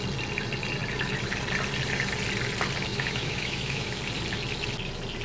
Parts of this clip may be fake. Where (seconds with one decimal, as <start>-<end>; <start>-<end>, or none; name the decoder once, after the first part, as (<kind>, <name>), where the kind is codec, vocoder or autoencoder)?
2.9-4.0 (autoencoder, DAC-VAE)